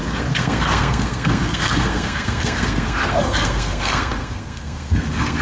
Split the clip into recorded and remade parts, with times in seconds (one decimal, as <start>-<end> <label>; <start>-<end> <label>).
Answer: 0.0-5.4 remade